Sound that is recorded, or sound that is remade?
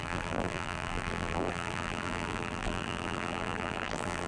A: remade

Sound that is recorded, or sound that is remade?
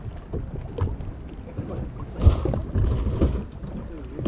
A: recorded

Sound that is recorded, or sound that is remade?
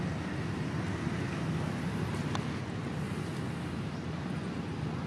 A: recorded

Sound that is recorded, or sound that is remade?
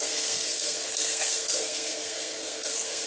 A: remade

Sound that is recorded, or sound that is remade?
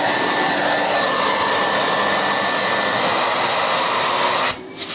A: recorded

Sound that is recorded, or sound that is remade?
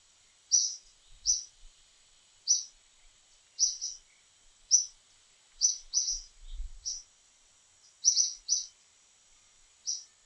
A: recorded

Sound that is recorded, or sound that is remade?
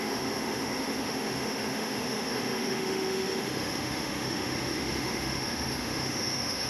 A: remade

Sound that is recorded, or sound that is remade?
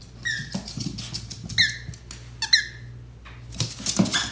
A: recorded